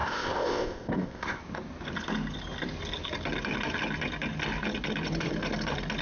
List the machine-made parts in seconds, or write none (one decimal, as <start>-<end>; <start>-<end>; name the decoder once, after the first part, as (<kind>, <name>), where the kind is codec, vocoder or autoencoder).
0.0-1.4 (codec, ZipCodec)